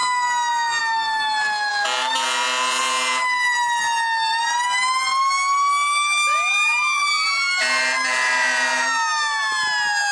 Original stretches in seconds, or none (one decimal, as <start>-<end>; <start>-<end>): 0.0-10.1